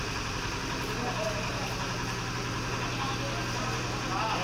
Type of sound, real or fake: real